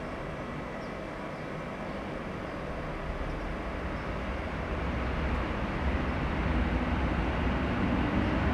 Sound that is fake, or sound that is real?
real